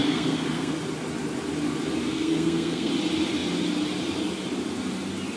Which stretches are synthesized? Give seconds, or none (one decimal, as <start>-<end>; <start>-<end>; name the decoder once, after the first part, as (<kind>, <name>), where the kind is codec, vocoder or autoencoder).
0.0-0.7 (codec, SNAC); 2.1-2.9